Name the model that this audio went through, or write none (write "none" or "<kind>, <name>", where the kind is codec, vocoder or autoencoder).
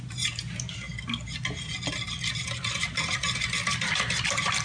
none